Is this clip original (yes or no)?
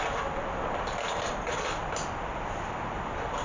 yes